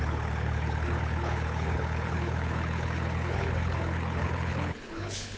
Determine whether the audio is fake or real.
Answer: fake